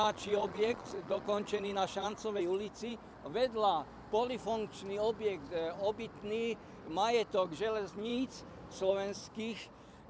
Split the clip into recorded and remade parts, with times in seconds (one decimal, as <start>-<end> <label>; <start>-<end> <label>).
0.0-2.4 remade; 2.4-10.1 recorded